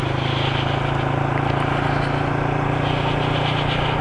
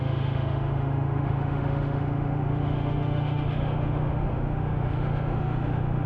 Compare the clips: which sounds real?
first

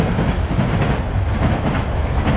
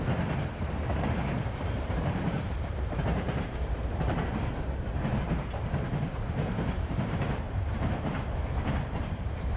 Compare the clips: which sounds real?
first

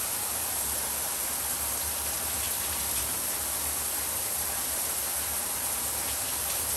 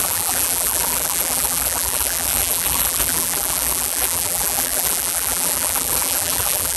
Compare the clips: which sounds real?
first